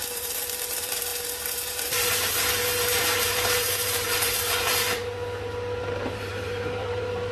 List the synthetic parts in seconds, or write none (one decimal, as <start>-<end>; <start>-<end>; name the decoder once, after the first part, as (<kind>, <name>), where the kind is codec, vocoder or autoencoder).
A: 0.0-5.0 (vocoder, BigVGAN v2); 5.8-7.3